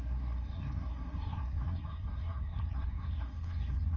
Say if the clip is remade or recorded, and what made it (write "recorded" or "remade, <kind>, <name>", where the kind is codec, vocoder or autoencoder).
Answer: remade, codec, SNAC